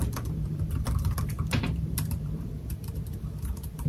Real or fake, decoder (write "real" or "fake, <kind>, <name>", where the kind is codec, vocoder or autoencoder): fake, vocoder, BigVGAN v2